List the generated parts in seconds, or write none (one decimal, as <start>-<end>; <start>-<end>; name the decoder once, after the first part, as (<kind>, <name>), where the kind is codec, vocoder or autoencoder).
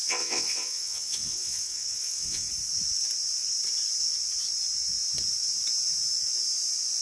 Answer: 0.0-2.5 (vocoder, WaveNeXt)